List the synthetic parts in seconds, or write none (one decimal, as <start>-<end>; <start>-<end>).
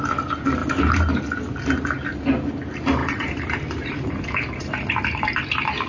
0.6-1.1; 3.0-5.9